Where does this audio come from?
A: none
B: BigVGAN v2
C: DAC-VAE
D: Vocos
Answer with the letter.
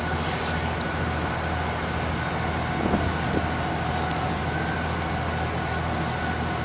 A